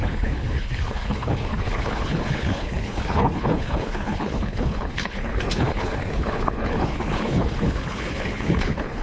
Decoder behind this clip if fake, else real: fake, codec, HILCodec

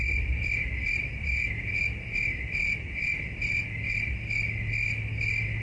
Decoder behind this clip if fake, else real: real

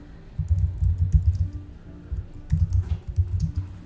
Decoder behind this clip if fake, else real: real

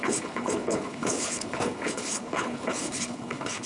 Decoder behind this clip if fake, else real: fake, codec, HILCodec